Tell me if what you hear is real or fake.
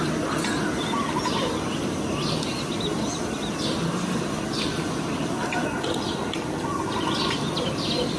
real